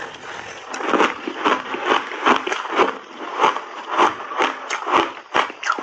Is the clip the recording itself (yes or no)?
yes